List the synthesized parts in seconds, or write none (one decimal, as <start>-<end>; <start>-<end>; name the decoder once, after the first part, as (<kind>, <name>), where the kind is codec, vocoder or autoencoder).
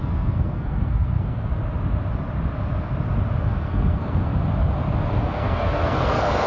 0.0-1.6 (codec, SNAC); 3.4-4.3; 5.1-6.5